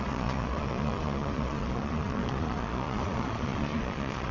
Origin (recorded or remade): remade